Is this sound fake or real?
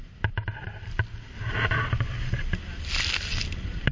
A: real